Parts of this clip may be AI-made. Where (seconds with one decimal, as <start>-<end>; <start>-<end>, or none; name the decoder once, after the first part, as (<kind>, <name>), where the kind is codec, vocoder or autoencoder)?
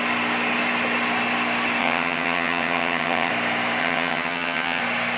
1.8-3.3 (vocoder, HiFi-GAN); 3.8-4.8